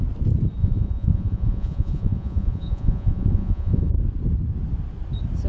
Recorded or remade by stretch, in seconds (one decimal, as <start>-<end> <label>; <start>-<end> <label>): 0.0-0.6 recorded; 0.6-3.9 remade; 3.9-5.5 recorded